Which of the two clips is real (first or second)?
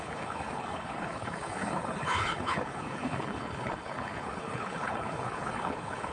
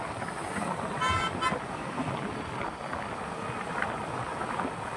second